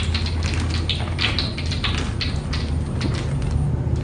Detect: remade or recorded recorded